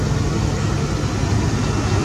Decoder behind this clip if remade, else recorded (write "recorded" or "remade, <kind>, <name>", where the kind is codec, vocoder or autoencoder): recorded